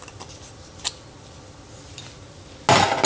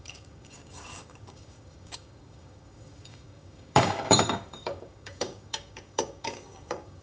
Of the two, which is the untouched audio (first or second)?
first